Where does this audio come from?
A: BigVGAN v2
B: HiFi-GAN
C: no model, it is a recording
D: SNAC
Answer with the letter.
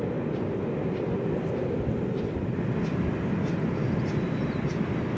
C